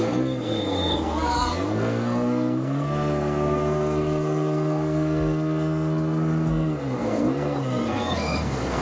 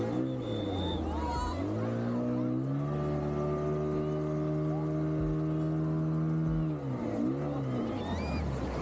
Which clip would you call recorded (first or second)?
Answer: second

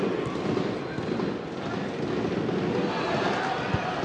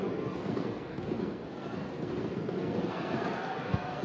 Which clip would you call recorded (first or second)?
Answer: first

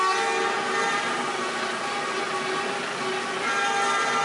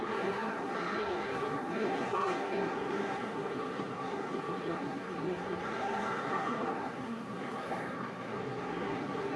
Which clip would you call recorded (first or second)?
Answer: first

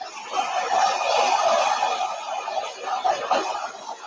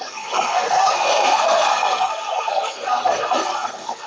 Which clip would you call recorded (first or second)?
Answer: first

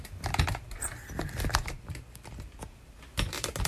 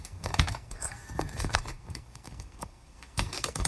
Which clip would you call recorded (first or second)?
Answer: first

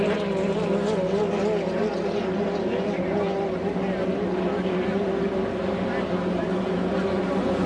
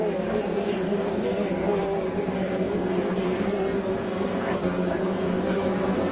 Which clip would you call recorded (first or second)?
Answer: first